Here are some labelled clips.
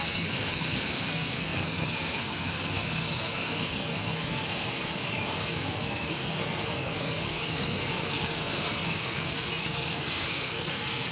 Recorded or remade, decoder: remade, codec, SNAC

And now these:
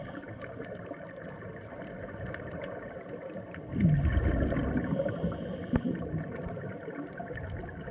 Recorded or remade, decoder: recorded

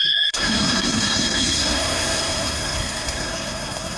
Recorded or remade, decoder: remade, codec, SNAC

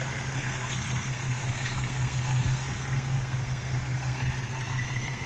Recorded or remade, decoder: remade, codec, SNAC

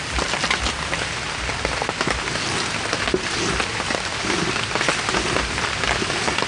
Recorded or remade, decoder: recorded